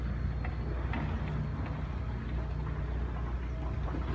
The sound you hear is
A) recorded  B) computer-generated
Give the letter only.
A